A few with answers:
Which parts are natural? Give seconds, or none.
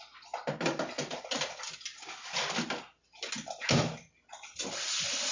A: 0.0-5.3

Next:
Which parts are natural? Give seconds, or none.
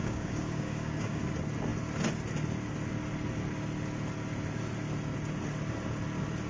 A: 1.2-6.5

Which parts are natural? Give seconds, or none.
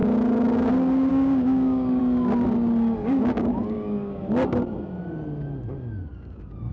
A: 0.7-1.1; 2.0-3.0; 4.2-6.1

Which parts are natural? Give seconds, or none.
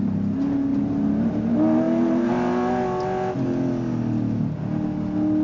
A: 0.0-5.4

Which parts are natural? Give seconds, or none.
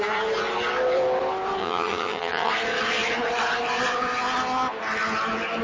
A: 0.0-1.6; 2.5-5.6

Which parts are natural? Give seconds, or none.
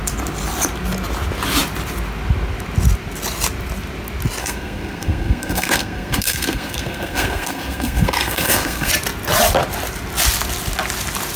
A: 0.0-4.4; 8.9-11.4